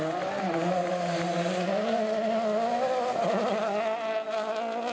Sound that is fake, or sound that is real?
real